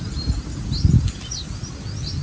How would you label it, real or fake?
real